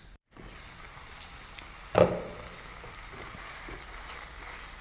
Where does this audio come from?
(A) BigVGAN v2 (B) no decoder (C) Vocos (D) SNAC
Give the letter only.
B